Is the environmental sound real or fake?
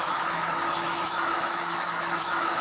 fake